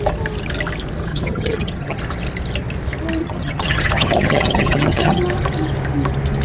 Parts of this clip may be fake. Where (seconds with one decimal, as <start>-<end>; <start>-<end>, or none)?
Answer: 1.1-2.0; 3.2-5.2